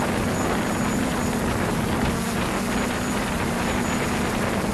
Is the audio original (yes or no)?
yes